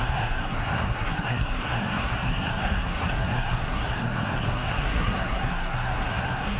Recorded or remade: remade